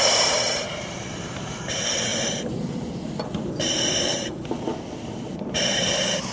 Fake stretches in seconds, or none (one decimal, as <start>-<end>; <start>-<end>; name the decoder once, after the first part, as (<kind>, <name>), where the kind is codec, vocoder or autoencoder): 2.1-5.7 (vocoder, BigVGAN v2)